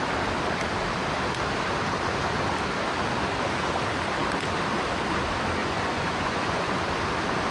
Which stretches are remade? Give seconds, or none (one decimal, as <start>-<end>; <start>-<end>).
5.6-6.8

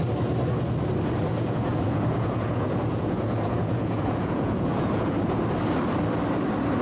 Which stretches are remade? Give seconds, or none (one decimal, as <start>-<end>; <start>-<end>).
1.3-5.4